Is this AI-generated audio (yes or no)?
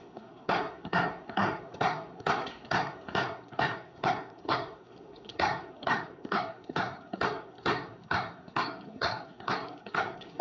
yes